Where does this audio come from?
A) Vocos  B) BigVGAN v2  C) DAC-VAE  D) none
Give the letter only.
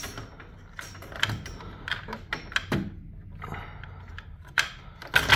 D